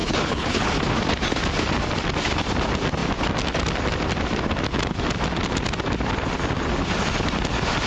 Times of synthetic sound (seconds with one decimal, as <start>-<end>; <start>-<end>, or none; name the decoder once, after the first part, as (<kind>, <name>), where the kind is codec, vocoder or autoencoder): 0.0-0.7 (codec, HILCodec)